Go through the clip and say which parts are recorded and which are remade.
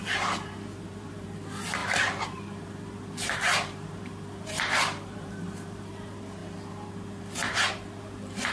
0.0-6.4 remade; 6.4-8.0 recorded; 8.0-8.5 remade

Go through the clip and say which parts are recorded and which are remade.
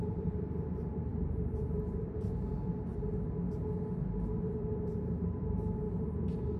0.0-2.9 remade; 2.9-4.1 recorded; 4.1-6.6 remade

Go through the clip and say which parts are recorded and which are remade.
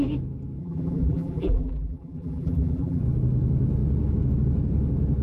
0.0-0.6 recorded; 0.6-3.0 remade; 3.0-5.2 recorded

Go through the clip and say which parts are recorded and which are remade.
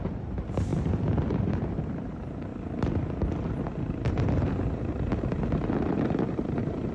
0.0-2.5 remade; 2.5-3.9 recorded; 3.9-6.9 remade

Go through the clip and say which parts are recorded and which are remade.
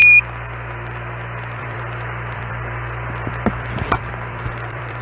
0.0-1.6 recorded; 1.6-5.0 remade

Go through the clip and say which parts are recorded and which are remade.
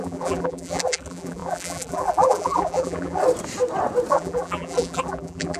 0.0-3.2 remade; 3.2-4.1 recorded; 4.1-5.6 remade